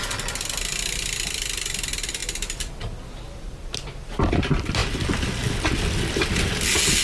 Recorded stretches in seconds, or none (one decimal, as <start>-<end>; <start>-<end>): 0.0-7.0